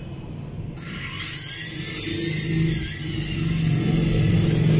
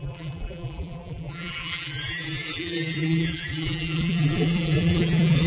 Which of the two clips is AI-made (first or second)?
second